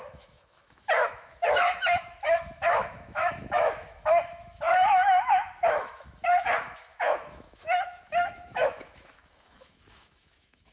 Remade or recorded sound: remade